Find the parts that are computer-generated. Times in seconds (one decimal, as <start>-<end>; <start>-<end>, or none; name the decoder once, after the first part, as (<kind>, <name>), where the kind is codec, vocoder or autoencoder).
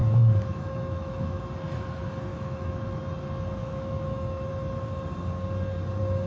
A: 0.0-1.4 (autoencoder, DAC-VAE); 2.3-3.0; 3.6-4.5